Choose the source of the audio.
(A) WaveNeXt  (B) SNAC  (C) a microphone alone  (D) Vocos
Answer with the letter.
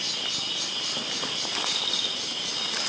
C